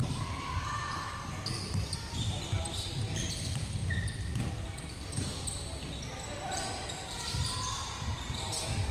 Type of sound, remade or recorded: remade